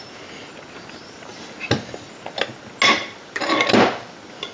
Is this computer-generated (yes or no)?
no